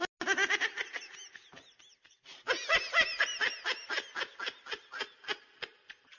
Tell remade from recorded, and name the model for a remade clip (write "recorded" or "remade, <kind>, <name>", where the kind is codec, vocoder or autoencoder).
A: recorded